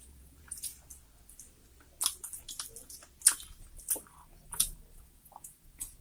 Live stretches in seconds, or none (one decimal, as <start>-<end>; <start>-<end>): 0.7-4.3

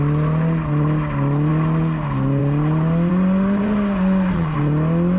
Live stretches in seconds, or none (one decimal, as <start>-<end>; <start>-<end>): 0.0-3.1; 4.6-5.2

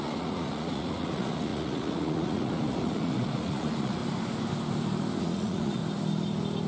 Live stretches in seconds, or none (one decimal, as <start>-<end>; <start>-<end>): 4.0-5.2; 5.8-6.7

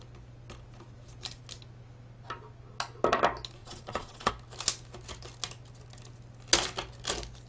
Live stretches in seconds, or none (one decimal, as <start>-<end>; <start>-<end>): 0.0-3.6; 4.3-7.5

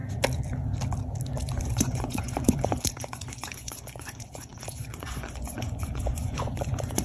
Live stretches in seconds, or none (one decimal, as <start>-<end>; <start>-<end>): 0.0-1.6

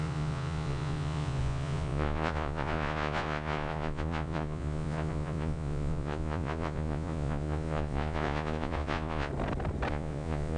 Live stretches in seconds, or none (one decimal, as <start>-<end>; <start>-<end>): 9.3-9.9

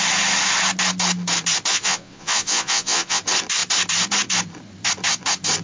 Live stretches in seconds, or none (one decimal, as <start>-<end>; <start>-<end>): 0.0-1.7; 3.2-5.6